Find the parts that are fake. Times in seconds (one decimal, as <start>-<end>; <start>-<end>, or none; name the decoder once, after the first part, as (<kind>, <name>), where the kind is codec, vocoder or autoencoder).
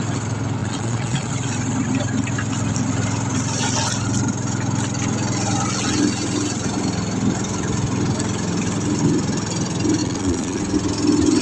0.6-1.3 (vocoder, Vocos); 10.0-10.6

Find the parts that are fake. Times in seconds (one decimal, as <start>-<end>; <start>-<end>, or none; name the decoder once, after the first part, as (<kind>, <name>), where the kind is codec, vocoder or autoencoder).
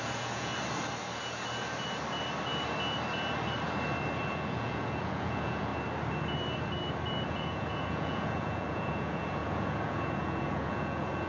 0.0-0.5 (vocoder, Vocos); 4.3-5.7; 7.3-11.3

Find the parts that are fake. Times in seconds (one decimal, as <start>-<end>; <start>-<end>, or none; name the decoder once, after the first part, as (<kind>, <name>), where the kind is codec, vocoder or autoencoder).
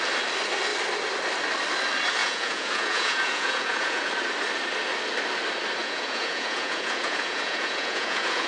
2.2-4.1 (vocoder, Vocos); 5.8-8.5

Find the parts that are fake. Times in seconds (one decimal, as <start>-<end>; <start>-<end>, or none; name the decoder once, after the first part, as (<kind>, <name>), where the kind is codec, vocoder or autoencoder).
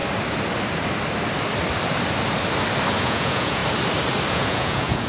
3.0-3.6 (vocoder, Vocos); 4.3-5.1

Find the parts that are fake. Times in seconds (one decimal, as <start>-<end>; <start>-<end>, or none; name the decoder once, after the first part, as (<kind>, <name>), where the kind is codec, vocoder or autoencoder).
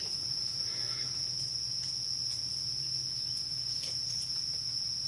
none